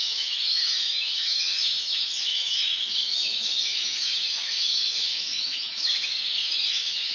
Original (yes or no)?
no